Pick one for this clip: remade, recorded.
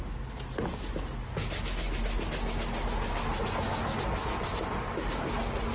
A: recorded